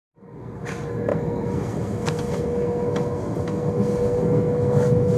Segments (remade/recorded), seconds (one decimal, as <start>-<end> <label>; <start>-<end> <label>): 0.0-5.2 remade